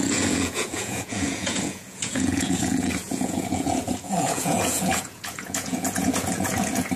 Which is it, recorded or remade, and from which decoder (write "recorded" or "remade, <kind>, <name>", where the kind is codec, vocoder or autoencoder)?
remade, vocoder, Vocos